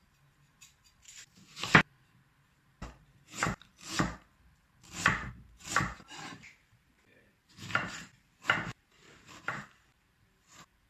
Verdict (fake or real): fake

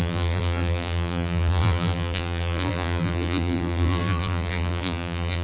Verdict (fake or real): fake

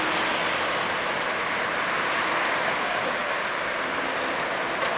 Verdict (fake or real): real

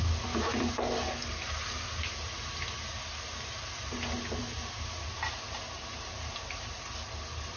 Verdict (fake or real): real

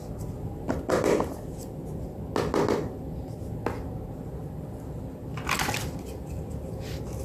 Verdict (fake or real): real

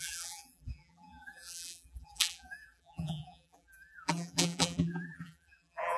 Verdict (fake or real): fake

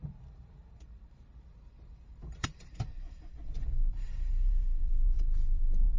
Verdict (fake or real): fake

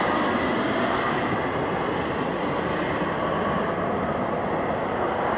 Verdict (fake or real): real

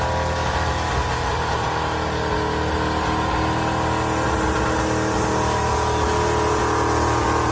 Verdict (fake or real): real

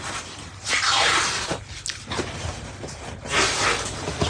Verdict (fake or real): real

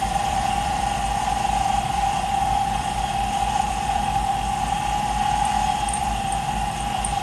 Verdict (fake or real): fake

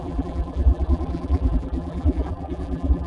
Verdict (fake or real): fake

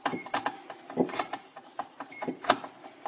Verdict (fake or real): fake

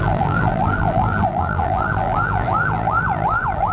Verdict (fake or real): fake